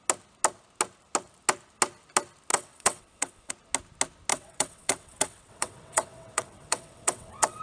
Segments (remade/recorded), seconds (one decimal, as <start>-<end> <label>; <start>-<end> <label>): 0.0-2.5 recorded; 2.5-3.5 remade; 3.5-4.3 recorded; 4.3-7.6 remade